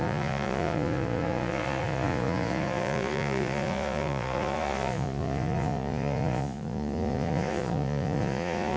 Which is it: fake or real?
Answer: fake